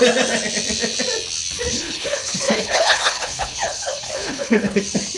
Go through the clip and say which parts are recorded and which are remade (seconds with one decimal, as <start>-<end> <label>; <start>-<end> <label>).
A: 0.0-1.7 recorded; 1.7-4.8 remade; 4.8-5.2 recorded